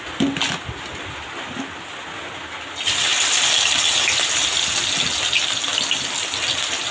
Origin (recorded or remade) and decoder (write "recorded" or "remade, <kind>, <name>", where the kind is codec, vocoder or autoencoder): recorded